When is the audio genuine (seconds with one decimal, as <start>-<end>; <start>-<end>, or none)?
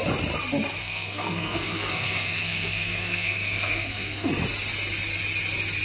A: 0.0-0.8; 4.3-5.8